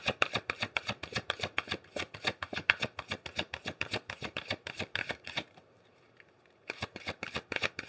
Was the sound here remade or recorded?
remade